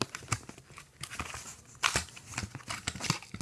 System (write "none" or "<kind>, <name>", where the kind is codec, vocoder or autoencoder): none